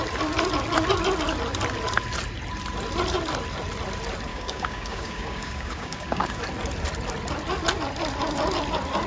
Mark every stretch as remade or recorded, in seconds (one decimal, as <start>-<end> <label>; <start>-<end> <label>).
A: 0.0-4.3 recorded; 4.3-6.4 remade; 6.4-9.1 recorded